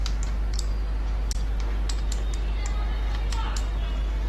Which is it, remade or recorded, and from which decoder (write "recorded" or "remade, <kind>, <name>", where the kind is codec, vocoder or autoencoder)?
recorded